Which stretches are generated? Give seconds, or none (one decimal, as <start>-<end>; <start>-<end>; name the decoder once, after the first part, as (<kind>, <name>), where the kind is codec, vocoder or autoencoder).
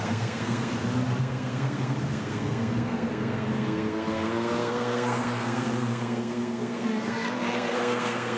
0.0-0.7 (codec, SNAC); 1.2-8.4